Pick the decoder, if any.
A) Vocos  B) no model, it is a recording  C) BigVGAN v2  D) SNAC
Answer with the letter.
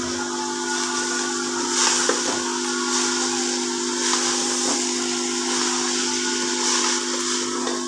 B